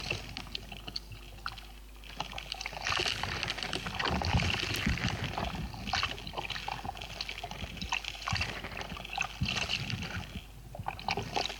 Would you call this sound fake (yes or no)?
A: no